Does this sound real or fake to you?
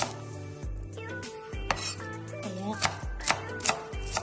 real